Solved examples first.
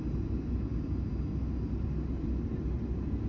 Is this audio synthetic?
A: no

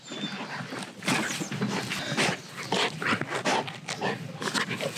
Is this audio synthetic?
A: no